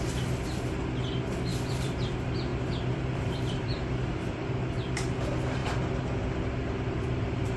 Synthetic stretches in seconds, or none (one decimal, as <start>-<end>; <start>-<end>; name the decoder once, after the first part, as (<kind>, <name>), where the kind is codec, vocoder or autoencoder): 1.5-2.1 (vocoder, BigVGAN v2); 2.5-4.5